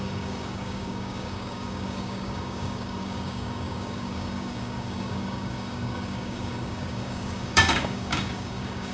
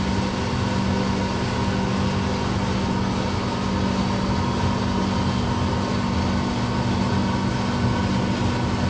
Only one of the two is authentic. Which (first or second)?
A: second